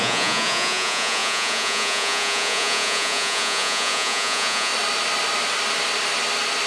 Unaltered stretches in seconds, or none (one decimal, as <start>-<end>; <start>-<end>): 4.7-6.7